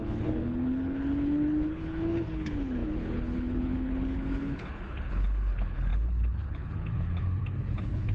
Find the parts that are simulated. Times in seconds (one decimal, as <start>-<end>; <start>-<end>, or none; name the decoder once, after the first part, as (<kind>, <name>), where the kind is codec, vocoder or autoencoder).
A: 0.0-8.1 (codec, HILCodec)